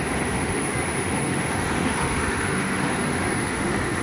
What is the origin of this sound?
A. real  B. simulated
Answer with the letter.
B